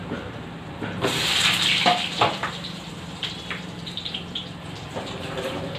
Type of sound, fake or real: fake